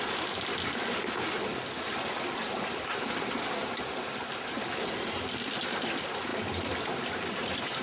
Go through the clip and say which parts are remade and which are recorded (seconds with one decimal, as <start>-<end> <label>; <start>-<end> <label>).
0.0-7.8 recorded